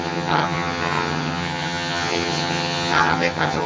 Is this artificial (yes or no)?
yes